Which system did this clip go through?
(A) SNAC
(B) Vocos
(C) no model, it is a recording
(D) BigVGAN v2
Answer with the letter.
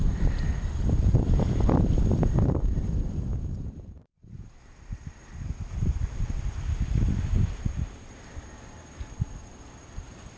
D